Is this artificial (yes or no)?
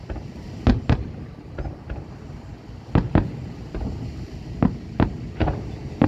no